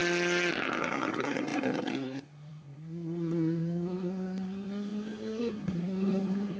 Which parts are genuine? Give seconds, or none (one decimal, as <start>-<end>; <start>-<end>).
0.0-0.8